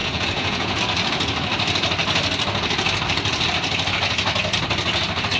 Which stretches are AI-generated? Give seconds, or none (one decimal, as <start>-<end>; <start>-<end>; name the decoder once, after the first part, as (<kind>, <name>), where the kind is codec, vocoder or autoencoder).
0.0-0.8 (vocoder, Vocos)